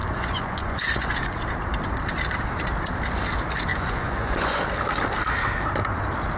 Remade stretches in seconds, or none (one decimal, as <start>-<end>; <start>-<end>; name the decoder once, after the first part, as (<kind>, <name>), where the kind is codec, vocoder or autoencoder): 0.0-1.4 (vocoder, Vocos); 3.7-4.6